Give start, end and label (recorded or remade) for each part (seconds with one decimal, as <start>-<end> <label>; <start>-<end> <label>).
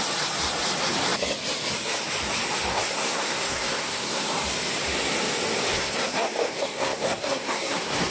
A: 0.0-2.7 recorded; 2.7-4.3 remade; 4.3-5.7 recorded; 5.7-8.1 remade